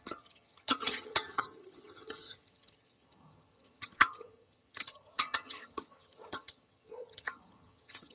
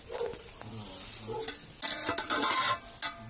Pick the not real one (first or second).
first